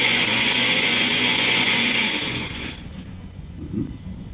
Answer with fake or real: fake